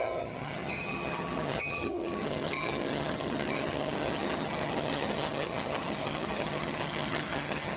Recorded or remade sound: remade